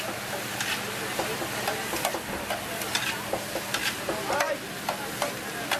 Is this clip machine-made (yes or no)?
no